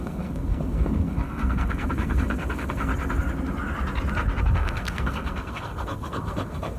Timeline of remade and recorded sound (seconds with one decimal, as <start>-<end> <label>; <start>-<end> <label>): 0.0-2.9 remade; 2.9-4.4 recorded; 4.4-6.8 remade